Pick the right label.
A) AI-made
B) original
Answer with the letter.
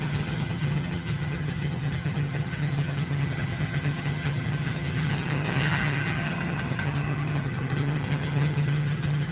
A